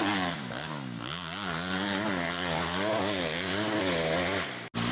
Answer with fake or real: real